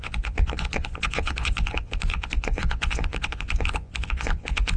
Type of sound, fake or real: fake